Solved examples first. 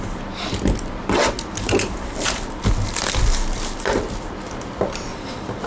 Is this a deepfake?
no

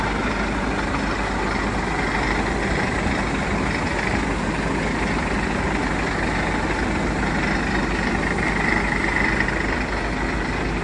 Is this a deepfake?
no